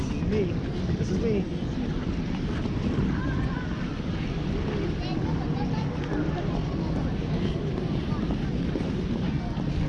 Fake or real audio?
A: real